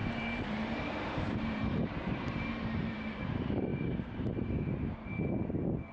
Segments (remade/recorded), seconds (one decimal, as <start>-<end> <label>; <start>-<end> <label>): 0.0-3.1 remade; 3.1-3.7 recorded; 3.7-5.1 remade; 5.1-5.9 recorded

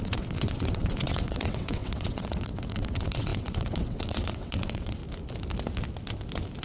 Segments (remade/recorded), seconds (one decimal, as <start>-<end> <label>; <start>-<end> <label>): 0.0-5.0 remade; 5.0-6.6 recorded

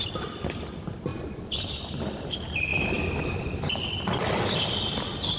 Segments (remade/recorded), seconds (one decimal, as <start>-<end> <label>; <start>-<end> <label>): 0.0-5.4 recorded

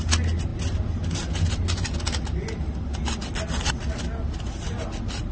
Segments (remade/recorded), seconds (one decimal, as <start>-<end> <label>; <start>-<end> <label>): 0.0-5.3 recorded

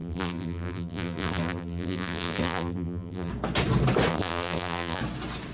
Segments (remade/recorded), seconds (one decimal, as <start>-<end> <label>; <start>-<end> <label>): 0.0-3.3 remade; 3.3-4.1 recorded; 4.1-5.0 remade; 5.0-5.5 recorded